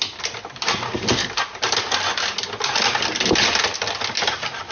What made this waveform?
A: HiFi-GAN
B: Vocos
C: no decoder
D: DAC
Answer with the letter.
C